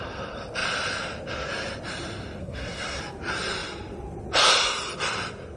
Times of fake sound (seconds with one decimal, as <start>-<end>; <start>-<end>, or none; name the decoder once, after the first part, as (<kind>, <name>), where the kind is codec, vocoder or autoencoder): 2.4-3.0 (codec, SNAC)